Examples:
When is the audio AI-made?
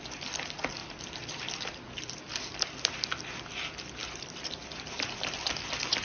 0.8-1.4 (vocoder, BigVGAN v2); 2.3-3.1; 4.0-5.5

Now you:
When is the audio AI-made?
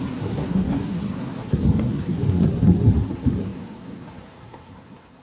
0.0-5.2 (codec, SNAC)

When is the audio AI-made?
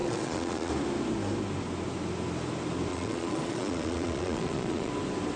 0.0-0.7 (vocoder, Vocos); 2.9-4.9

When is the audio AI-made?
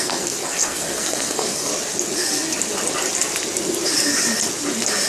0.0-1.7 (codec, SNAC)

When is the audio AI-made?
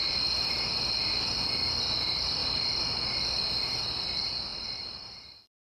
0.0-0.5 (vocoder, BigVGAN v2); 4.5-5.7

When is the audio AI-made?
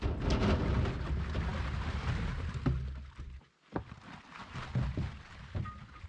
none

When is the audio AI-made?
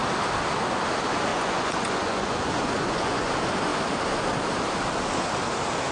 1.3-3.3 (vocoder, Vocos)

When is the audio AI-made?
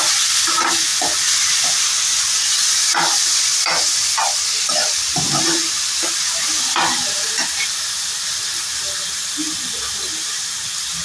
none